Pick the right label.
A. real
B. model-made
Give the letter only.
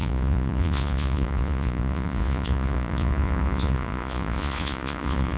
B